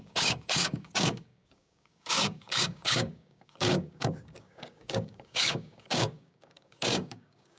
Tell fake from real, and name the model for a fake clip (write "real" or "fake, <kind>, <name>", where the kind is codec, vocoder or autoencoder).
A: fake, codec, DAC